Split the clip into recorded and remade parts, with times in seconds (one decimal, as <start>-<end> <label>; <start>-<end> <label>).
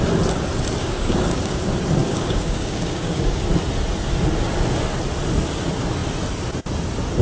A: 0.0-0.8 recorded; 0.8-1.6 remade; 1.6-2.0 recorded; 2.0-3.4 remade; 3.4-7.2 recorded